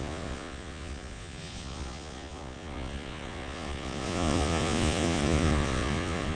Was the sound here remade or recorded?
remade